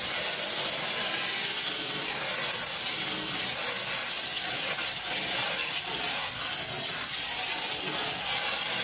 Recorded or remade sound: recorded